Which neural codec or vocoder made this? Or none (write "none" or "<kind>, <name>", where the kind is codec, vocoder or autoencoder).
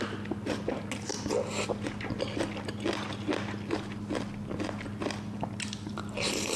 none